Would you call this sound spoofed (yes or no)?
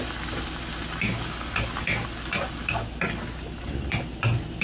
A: no